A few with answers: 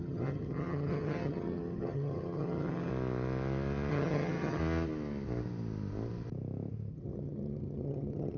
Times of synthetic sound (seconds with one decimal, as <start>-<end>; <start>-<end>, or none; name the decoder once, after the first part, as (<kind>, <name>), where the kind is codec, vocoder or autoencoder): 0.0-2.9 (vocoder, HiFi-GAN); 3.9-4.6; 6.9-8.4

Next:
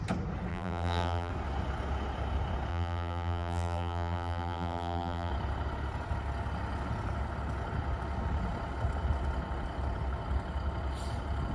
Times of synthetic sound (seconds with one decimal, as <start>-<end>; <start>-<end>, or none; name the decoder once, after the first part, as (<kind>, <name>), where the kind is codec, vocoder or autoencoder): 0.5-1.3 (vocoder, BigVGAN v2); 2.7-5.3

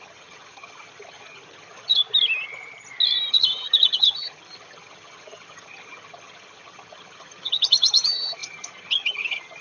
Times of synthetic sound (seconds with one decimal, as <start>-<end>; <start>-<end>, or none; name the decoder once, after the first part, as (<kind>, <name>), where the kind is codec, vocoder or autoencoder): 0.0-2.0 (vocoder, HiFi-GAN); 3.3-9.6

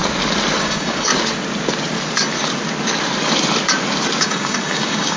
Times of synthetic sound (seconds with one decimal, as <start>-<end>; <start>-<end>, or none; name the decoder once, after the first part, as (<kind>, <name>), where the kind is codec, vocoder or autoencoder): 0.6-1.1 (codec, DAC); 4.2-5.2

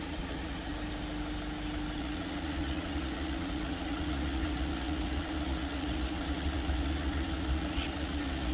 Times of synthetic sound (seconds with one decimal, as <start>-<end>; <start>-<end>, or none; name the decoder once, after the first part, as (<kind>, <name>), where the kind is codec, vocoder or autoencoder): 0.0-0.7 (vocoder, Vocos); 2.0-8.5

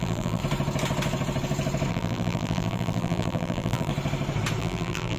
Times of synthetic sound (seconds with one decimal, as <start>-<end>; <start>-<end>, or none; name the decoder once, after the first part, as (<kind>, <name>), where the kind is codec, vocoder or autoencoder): 0.0-0.4 (vocoder, BigVGAN v2); 1.9-3.9; 4.6-5.2